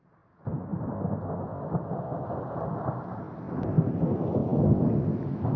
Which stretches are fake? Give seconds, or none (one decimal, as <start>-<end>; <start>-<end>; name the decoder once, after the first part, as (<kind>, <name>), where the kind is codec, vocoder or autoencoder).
4.4-5.6 (autoencoder, DAC-VAE)